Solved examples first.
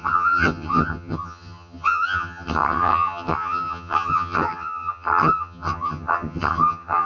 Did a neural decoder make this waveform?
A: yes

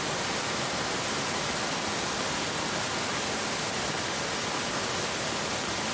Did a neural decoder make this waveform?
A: no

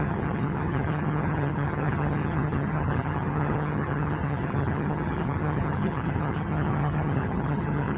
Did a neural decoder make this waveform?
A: yes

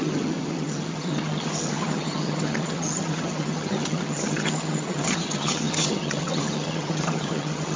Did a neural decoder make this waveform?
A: yes